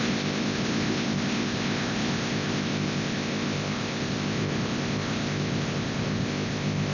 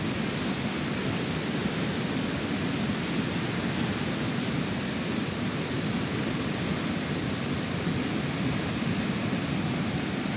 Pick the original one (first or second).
second